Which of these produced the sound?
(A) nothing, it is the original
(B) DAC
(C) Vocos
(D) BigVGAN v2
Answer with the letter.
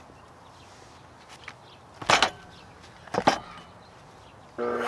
A